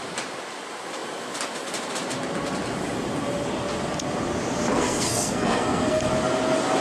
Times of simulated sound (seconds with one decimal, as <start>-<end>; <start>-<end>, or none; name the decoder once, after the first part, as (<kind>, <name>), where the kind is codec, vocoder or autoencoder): 4.7-6.1 (codec, SNAC)